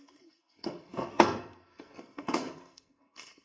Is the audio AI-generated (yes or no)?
yes